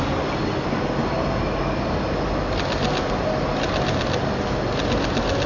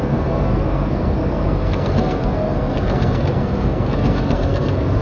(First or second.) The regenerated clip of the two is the second